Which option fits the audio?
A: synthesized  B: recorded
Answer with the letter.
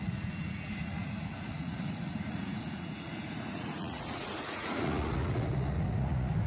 A